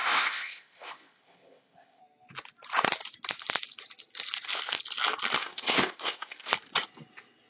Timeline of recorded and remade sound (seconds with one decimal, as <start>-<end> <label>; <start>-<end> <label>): 0.0-2.0 remade; 2.0-5.4 recorded; 5.4-6.5 remade; 6.5-7.5 recorded